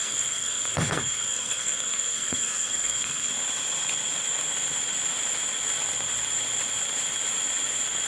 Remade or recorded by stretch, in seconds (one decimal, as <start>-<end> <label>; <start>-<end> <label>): 0.0-3.3 remade; 3.3-8.1 recorded

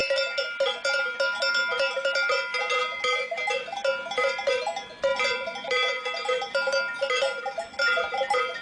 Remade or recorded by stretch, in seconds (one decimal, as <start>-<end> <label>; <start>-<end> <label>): 0.0-8.6 recorded

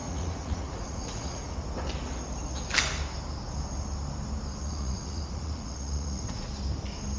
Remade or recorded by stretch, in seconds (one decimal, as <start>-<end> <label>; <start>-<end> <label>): 0.0-1.6 remade; 1.6-4.6 recorded; 4.6-6.5 remade; 6.5-7.2 recorded

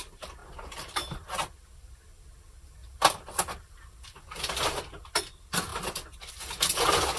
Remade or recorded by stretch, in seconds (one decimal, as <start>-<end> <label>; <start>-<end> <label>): 0.0-0.4 recorded; 0.4-1.7 remade; 1.7-2.8 recorded; 2.8-4.8 remade; 4.8-7.2 recorded